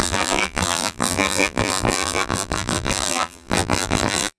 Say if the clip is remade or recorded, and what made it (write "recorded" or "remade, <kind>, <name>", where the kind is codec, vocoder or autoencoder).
remade, vocoder, BigVGAN v2